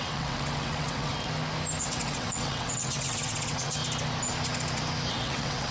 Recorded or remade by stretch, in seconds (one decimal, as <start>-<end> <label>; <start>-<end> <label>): 0.0-1.1 remade; 1.1-1.8 recorded; 1.8-3.8 remade; 3.8-5.1 recorded; 5.1-5.7 remade